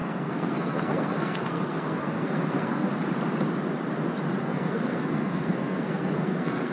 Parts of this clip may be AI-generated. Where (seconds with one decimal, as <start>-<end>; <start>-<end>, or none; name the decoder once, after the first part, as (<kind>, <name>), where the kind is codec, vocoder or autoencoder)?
0.0-2.9 (codec, SNAC); 4.4-6.7